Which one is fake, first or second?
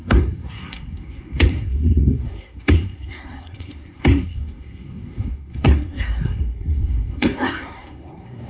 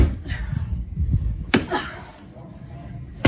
first